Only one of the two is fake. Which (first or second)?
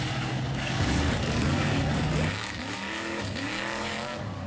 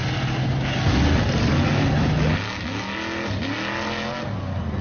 first